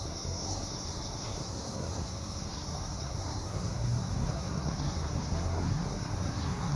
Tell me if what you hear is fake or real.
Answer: fake